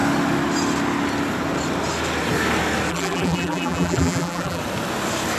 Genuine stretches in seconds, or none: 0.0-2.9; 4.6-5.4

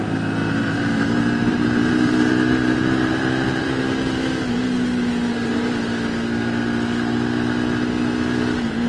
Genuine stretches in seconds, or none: 0.0-0.4; 3.8-8.9

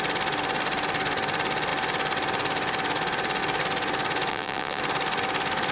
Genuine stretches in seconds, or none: 0.0-4.3; 4.8-5.7

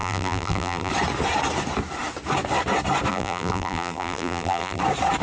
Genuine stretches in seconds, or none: 0.9-3.1; 4.8-5.2

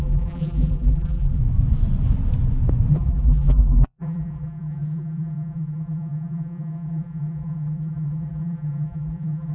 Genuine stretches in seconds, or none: 1.4-2.9